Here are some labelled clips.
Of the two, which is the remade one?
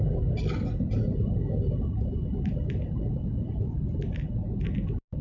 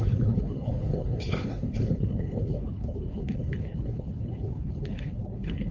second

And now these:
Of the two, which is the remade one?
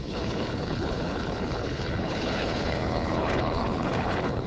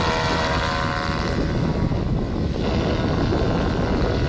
first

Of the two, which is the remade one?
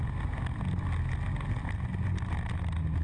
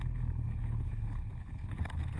second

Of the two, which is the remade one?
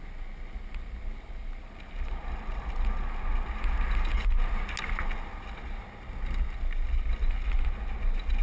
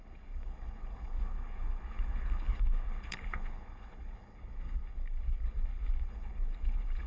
second